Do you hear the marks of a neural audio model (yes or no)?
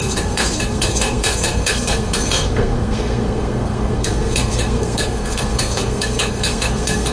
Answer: yes